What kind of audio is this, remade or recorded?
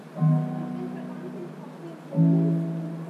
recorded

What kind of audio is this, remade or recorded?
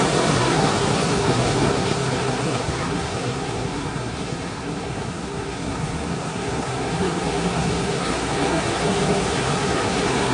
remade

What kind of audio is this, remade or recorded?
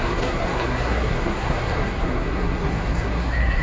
remade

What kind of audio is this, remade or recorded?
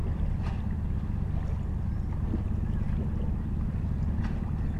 recorded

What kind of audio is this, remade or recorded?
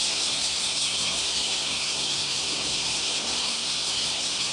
remade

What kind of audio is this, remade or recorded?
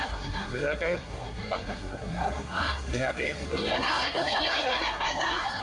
remade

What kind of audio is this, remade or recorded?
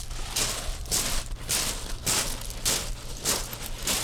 recorded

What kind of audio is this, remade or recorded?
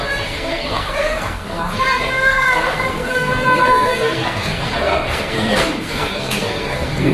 remade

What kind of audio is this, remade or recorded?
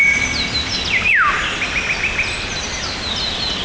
recorded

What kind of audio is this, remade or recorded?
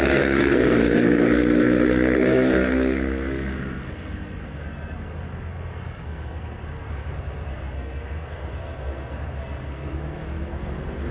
remade